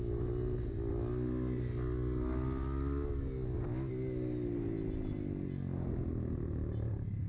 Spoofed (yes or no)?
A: no